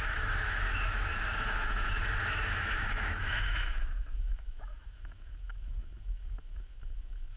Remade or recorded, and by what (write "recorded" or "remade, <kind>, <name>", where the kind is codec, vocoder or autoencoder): remade, autoencoder, DAC-VAE